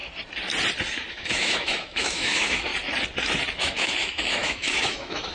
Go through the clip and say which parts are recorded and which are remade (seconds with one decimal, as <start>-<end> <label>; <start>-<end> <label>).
0.0-1.1 recorded; 1.1-2.7 remade; 2.7-3.6 recorded; 3.6-5.3 remade